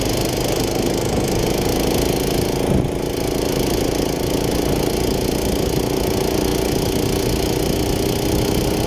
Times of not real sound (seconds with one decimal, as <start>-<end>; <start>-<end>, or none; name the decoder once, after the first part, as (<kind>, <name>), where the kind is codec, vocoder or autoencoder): none